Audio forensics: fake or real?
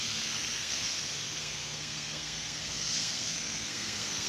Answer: fake